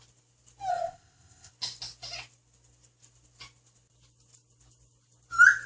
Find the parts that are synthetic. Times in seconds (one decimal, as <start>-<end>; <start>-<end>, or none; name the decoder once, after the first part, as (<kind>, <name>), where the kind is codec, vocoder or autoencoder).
0.7-1.5 (codec, ZipCodec)